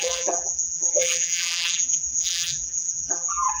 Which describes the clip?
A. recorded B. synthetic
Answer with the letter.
B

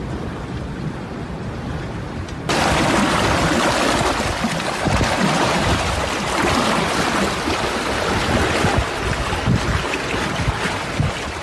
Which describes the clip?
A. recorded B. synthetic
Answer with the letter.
A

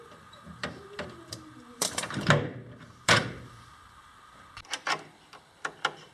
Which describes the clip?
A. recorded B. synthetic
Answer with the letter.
B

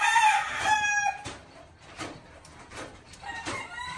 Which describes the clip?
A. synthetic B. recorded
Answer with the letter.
A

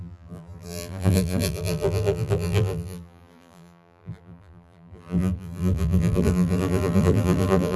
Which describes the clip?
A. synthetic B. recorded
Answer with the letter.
A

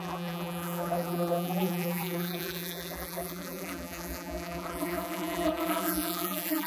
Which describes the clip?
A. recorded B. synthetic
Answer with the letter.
B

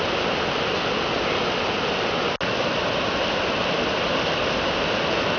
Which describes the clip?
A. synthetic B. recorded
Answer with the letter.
B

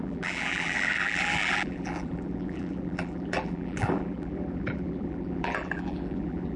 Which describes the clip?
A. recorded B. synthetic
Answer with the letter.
B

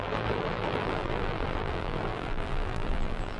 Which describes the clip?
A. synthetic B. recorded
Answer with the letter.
A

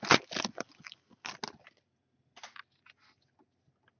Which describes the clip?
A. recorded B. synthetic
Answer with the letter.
A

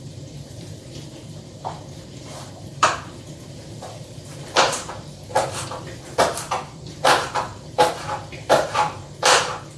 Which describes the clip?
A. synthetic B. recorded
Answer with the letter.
A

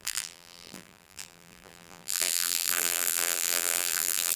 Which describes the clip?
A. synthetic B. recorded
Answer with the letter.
A